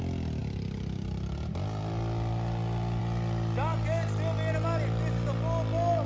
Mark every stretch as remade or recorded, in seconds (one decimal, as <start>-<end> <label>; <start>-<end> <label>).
0.0-6.1 recorded